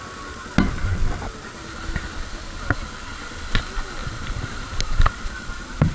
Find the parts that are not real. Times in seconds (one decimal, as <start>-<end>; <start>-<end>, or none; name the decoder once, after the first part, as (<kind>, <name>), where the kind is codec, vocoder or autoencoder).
4.0-5.9 (vocoder, BigVGAN v2)